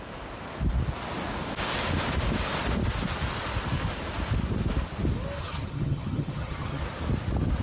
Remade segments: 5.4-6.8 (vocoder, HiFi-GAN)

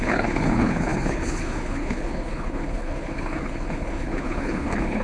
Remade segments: 0.0-5.0 (codec, HILCodec)